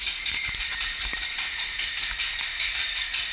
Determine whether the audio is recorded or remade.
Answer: recorded